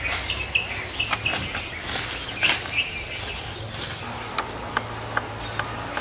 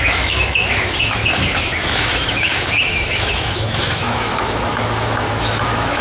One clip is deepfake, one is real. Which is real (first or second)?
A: first